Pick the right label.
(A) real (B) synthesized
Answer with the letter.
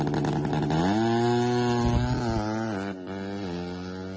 A